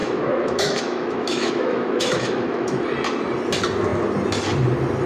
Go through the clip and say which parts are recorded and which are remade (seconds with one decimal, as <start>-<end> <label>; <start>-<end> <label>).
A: 0.0-2.8 remade; 2.8-5.1 recorded